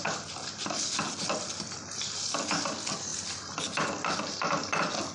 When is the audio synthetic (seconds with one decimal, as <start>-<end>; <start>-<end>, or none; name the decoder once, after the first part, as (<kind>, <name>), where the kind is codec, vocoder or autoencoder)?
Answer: none

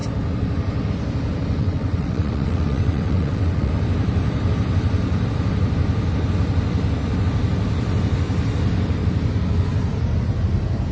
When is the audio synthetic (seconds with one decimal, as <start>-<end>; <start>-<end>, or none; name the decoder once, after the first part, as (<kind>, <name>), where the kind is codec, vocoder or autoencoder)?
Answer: 1.6-3.7 (vocoder, WaveNeXt)

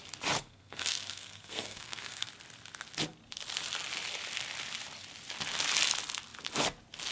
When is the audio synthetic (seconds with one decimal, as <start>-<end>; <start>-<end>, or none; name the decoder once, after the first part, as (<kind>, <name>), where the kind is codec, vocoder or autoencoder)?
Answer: 0.4-2.3 (codec, SNAC)